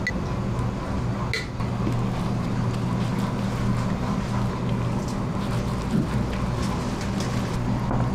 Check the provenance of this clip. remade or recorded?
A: recorded